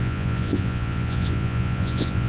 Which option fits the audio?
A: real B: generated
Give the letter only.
B